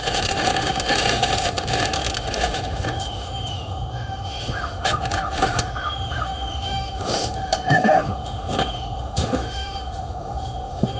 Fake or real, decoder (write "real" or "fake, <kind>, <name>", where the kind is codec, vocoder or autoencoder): fake, autoencoder, DAC-VAE